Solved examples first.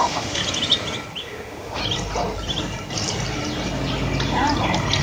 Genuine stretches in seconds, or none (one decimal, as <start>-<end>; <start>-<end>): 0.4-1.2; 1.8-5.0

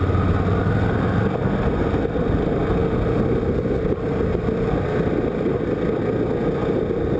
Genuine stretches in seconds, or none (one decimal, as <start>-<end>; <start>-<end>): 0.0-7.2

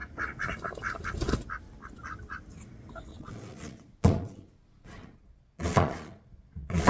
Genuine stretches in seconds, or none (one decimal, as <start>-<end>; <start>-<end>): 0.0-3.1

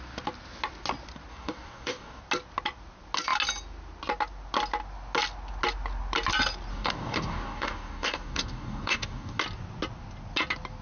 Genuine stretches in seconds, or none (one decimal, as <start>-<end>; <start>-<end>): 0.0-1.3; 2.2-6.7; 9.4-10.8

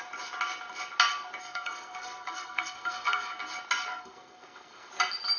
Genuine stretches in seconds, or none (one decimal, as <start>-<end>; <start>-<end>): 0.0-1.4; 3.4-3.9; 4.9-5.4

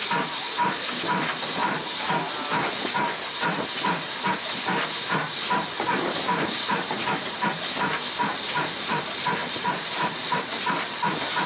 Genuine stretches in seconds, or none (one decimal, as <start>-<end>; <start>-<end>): 0.0-9.4; 10.3-11.5

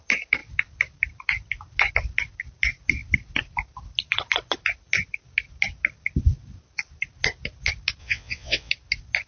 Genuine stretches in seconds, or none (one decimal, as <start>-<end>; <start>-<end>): 0.0-8.0; 8.7-9.3